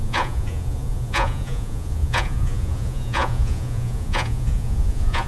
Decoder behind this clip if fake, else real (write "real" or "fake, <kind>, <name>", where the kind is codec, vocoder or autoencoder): fake, vocoder, Vocos